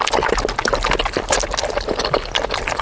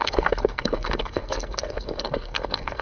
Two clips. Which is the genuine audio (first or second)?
first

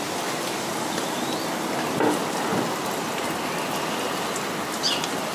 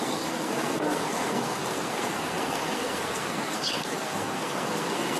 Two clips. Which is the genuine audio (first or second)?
first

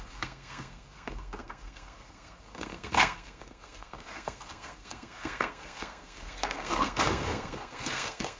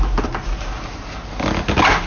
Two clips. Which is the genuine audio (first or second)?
second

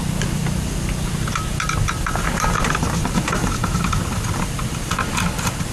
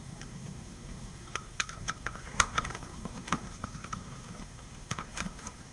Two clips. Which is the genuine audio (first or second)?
first